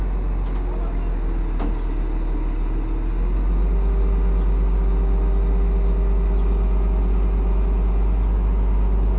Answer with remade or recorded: recorded